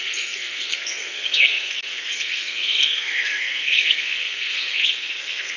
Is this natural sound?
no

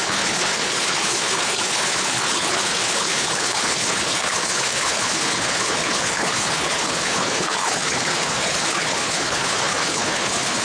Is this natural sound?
no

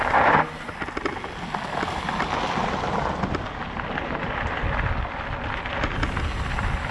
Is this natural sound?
yes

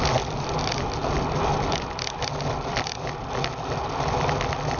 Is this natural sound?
yes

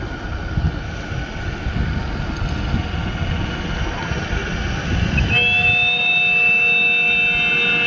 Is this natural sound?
yes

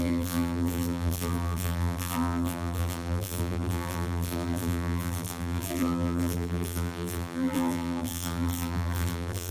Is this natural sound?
no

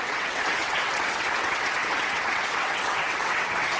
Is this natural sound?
no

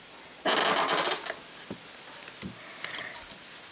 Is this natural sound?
yes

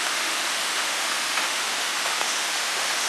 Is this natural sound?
no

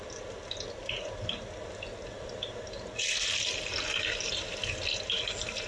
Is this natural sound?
yes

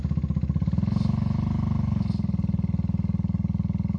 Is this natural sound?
yes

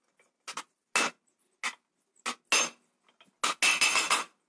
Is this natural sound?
yes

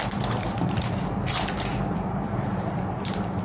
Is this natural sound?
no